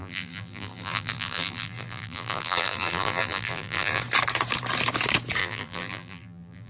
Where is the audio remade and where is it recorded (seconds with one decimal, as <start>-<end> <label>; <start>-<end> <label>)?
0.0-4.0 remade; 4.0-5.4 recorded; 5.4-6.7 remade